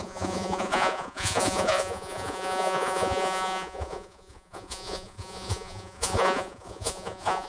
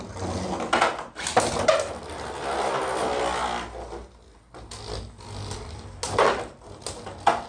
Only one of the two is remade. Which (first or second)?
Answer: first